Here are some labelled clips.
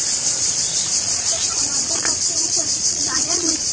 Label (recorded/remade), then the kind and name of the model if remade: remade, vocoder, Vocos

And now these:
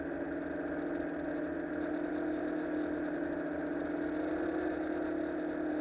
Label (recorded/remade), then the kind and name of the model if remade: recorded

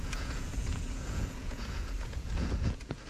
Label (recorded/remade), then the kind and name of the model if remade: remade, vocoder, Vocos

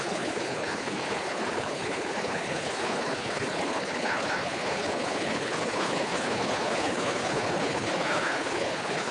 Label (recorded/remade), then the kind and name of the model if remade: remade, codec, HILCodec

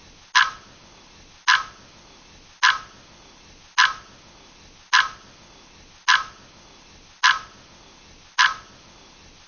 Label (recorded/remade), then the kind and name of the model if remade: recorded